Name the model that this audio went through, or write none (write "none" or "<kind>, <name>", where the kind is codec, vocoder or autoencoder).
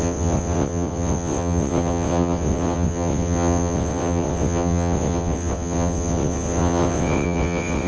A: vocoder, WaveNeXt